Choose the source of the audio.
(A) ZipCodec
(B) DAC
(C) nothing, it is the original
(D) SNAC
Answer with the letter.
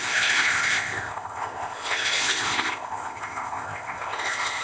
A